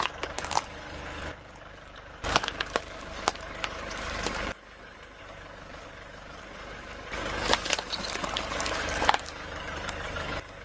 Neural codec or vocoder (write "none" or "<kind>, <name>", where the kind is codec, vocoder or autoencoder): codec, DAC